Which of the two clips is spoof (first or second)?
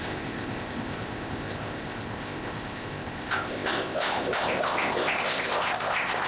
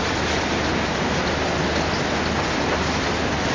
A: first